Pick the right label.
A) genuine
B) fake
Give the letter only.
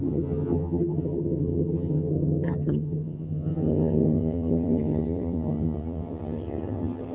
B